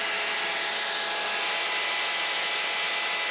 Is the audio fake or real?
real